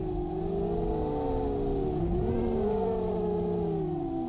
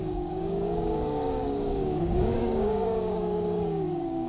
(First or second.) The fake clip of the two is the second